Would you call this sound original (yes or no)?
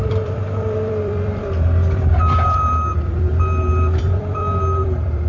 no